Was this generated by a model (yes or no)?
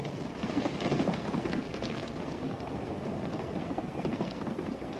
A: yes